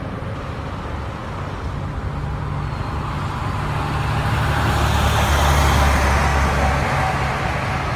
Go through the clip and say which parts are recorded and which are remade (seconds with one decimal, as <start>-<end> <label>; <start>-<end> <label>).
0.0-8.0 recorded